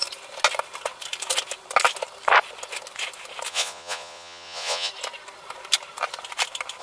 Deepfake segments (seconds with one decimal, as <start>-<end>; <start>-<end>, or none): 3.5-4.9